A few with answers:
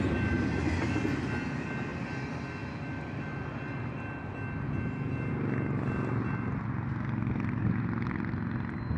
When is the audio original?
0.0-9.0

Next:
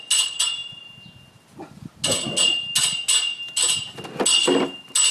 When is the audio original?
0.0-5.1

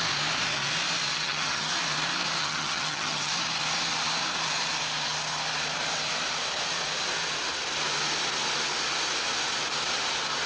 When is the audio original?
0.0-1.1; 1.7-2.4; 3.3-10.5

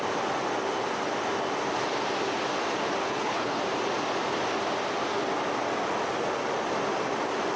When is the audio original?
0.0-3.0; 3.6-7.6

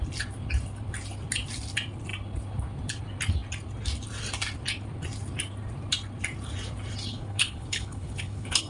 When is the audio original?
0.0-7.1

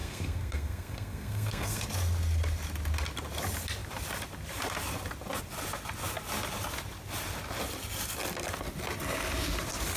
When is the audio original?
1.8-10.0

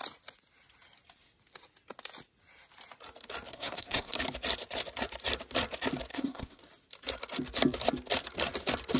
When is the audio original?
0.0-3.5; 4.2-6.1; 6.6-9.0

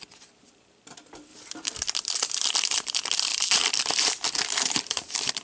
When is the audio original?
none